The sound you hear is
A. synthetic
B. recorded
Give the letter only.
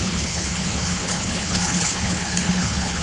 A